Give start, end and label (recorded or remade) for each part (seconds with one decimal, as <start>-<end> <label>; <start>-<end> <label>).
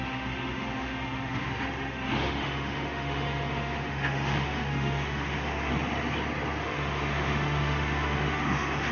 0.0-5.7 remade; 5.7-6.6 recorded; 6.6-8.9 remade